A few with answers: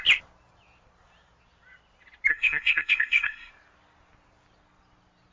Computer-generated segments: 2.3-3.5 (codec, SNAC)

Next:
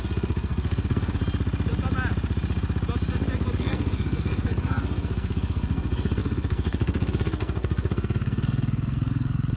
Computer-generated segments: 0.0-1.2 (codec, SNAC); 3.6-9.6